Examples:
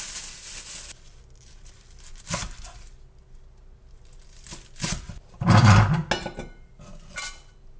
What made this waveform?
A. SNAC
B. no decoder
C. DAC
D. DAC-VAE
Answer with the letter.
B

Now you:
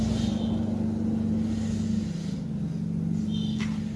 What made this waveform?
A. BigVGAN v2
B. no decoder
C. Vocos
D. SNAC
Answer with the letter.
B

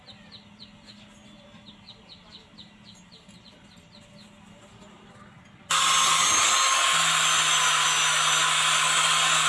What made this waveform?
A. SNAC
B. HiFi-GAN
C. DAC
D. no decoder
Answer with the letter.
D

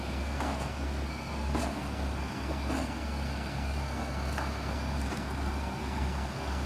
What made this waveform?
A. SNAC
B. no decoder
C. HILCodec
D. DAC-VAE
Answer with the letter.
A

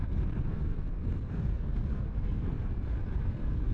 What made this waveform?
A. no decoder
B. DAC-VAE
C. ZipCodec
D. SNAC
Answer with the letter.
D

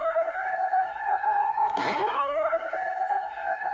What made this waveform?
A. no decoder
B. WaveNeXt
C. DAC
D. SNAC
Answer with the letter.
D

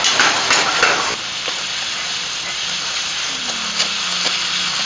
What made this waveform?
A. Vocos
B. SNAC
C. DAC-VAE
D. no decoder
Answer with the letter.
D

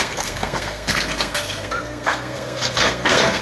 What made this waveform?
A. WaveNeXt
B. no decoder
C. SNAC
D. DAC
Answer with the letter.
C